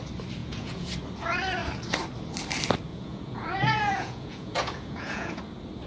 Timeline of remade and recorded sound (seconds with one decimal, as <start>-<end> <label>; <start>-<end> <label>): 0.0-0.4 recorded; 0.4-0.9 remade; 0.9-2.9 recorded; 2.9-5.4 remade; 5.4-5.9 recorded